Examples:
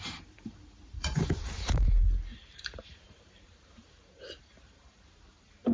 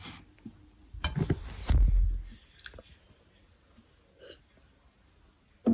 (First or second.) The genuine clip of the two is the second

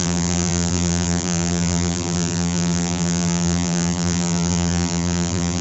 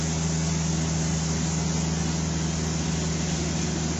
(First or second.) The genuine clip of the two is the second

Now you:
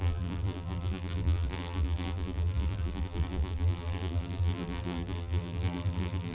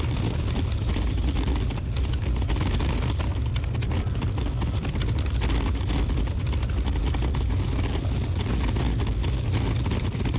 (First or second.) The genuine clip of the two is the second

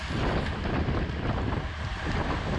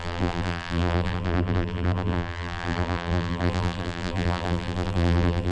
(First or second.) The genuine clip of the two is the first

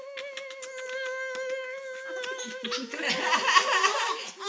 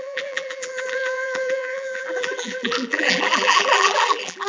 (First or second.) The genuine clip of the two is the first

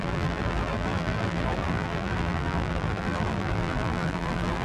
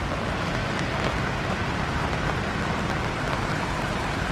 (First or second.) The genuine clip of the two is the second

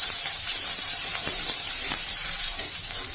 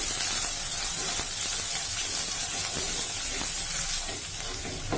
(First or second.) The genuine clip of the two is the second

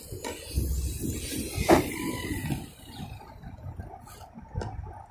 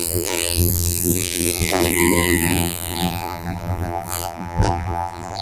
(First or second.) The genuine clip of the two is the first